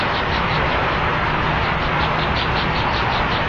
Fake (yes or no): no